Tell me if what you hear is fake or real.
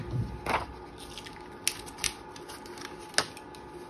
real